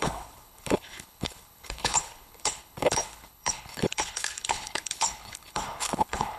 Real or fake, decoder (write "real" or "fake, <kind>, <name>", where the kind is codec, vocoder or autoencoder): fake, codec, HILCodec